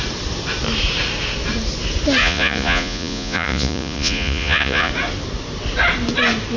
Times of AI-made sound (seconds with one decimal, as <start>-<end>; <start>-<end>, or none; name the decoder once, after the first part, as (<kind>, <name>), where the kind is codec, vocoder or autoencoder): 2.2-4.9 (vocoder, Vocos)